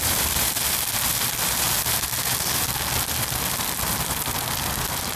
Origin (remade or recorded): remade